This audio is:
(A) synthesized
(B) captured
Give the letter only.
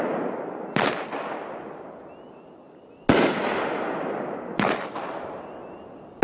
B